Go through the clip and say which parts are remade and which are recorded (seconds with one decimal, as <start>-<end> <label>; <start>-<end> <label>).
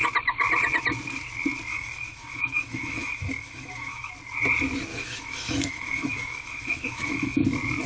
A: 0.0-1.7 recorded; 1.7-4.1 remade; 4.1-4.9 recorded; 4.9-7.4 remade; 7.4-7.9 recorded